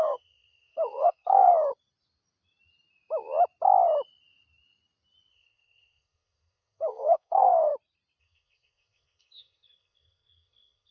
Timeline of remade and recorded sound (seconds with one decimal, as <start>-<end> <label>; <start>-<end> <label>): 0.0-1.5 remade; 1.5-5.3 recorded; 5.3-7.7 remade; 7.7-8.2 recorded; 8.2-10.9 remade